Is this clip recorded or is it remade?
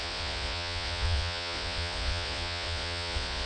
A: remade